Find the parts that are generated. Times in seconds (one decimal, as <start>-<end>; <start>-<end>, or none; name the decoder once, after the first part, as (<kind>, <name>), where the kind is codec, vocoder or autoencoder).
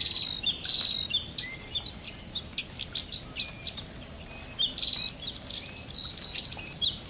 none